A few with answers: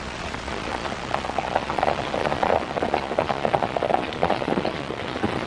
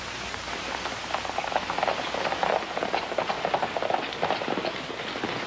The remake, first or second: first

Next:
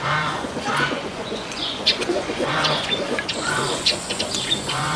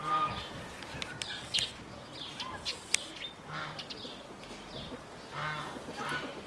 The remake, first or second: first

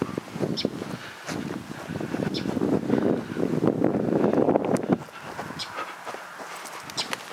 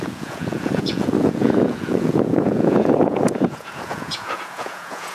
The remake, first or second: second